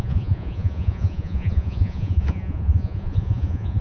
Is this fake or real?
fake